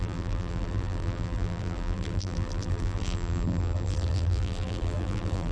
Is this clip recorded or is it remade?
remade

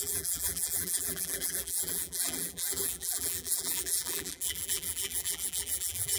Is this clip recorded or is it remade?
remade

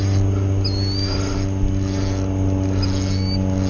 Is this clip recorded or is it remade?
recorded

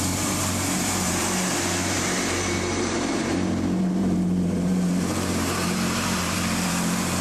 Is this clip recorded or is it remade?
remade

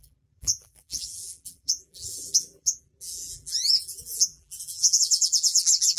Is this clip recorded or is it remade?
remade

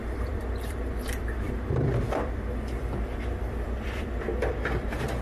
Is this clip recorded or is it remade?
remade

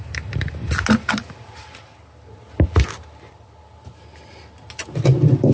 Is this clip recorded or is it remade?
recorded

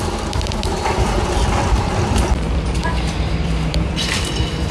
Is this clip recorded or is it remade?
remade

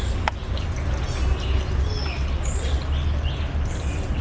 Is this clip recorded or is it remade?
recorded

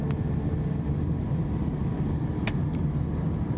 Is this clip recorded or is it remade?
recorded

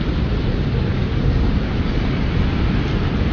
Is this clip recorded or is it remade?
remade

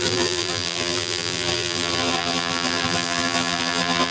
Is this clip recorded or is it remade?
remade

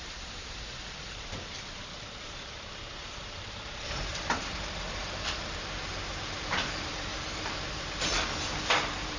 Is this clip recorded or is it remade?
remade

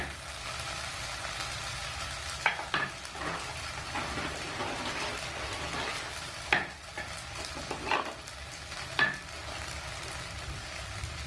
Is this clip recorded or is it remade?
recorded